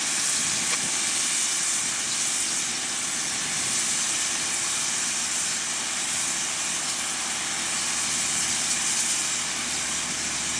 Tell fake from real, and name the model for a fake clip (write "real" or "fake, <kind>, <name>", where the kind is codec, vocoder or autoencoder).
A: real